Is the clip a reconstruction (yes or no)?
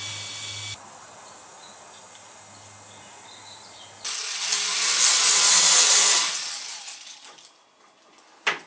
no